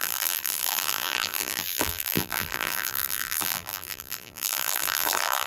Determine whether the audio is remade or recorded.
remade